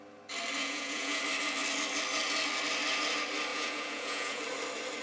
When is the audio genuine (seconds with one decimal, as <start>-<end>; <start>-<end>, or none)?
0.0-0.6; 1.2-3.5; 4.4-5.0